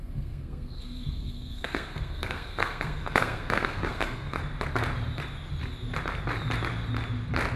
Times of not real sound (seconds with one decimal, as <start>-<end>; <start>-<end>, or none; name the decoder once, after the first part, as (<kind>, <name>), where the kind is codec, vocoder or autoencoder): 0.0-4.4 (codec, SNAC)